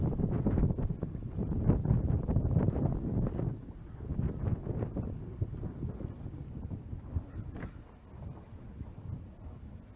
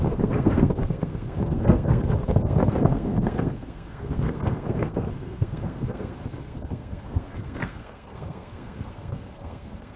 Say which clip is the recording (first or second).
first